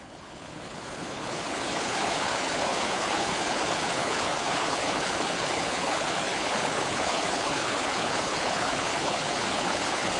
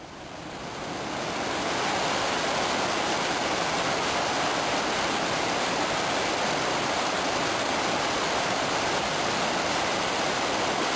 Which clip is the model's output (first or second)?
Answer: first